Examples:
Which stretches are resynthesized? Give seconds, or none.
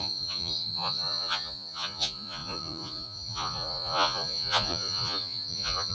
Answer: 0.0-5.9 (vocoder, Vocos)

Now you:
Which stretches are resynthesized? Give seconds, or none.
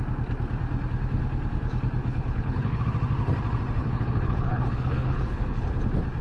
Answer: 2.0-2.8 (codec, HILCodec); 3.8-5.7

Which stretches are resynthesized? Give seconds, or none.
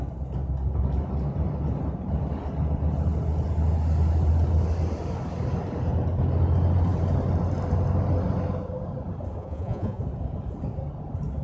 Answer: 9.4-10.0 (vocoder, Vocos)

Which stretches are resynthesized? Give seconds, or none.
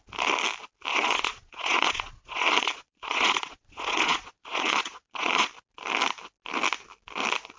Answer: 0.9-5.5 (vocoder, Vocos)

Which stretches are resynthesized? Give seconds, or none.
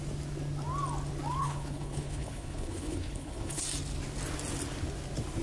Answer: 1.4-3.6 (codec, HILCodec)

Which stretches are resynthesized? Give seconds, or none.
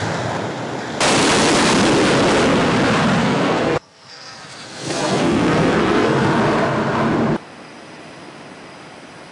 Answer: 3.2-6.4 (codec, SNAC)